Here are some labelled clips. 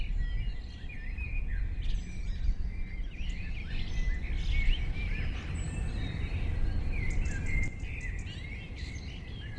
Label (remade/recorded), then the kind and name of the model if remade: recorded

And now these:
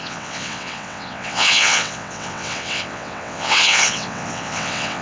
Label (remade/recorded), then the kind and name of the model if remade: remade, vocoder, WaveNeXt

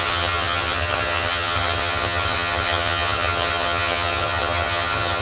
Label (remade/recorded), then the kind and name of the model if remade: remade, vocoder, HiFi-GAN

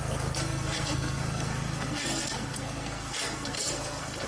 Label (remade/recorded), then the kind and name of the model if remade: remade, codec, SNAC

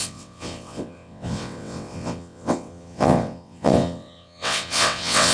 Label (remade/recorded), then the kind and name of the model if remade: remade, vocoder, WaveNeXt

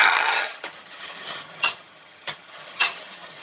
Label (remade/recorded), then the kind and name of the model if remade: remade, vocoder, HiFi-GAN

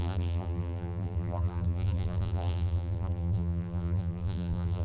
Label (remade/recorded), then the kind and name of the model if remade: remade, vocoder, BigVGAN v2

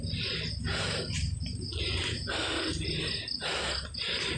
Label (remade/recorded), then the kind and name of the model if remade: recorded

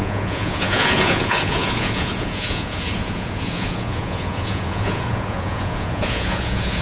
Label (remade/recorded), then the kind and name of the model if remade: remade, vocoder, Vocos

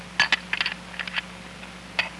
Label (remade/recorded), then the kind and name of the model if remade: recorded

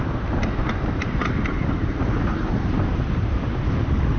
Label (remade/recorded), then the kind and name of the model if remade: remade, vocoder, BigVGAN v2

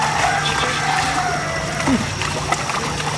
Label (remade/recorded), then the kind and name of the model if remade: recorded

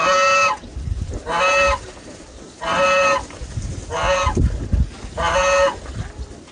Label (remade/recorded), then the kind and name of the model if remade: recorded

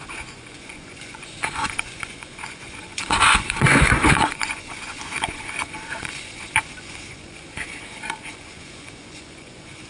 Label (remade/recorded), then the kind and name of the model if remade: remade, vocoder, Vocos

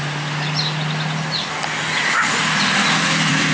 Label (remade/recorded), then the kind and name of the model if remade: recorded